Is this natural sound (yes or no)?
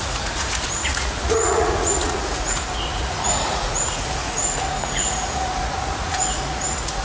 no